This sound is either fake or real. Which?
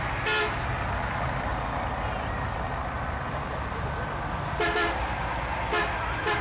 real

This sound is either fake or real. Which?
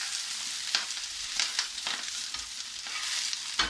real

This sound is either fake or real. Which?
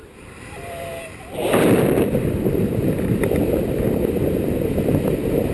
fake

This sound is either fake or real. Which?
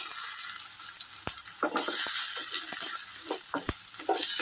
real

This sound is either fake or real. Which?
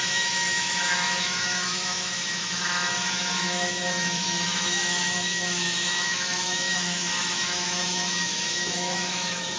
fake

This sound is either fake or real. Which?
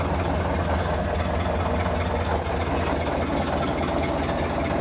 real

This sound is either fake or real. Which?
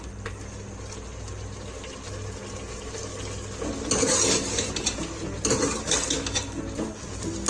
real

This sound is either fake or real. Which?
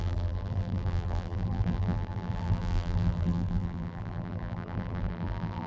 fake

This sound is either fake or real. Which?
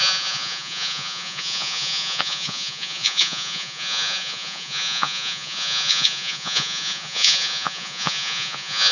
fake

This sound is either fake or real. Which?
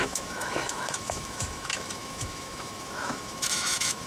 fake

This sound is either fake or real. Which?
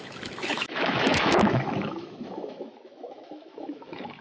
fake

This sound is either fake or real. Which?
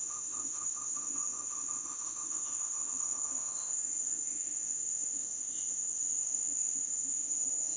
fake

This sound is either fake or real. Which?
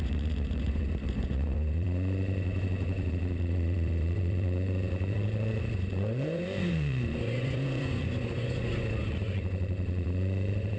fake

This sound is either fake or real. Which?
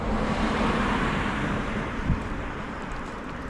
fake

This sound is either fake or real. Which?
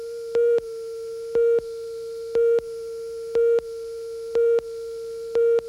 real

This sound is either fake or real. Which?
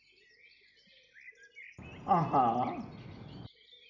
real